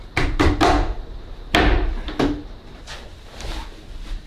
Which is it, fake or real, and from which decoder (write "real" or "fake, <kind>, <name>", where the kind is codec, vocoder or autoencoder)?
real